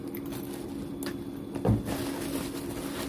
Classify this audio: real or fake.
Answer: real